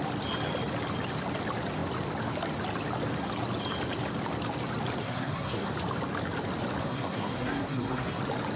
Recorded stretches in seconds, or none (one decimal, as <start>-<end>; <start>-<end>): 0.0-5.0; 5.7-6.8; 8.2-8.6